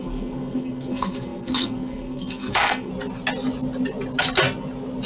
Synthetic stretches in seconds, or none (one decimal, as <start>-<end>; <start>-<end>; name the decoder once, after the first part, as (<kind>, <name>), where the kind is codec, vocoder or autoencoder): 0.0-2.9 (codec, SNAC)